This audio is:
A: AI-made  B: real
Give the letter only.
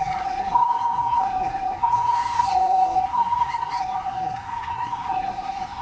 A